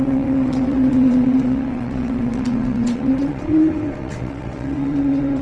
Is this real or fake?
fake